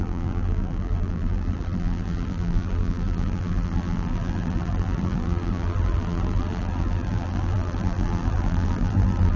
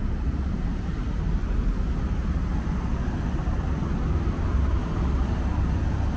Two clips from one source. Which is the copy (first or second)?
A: first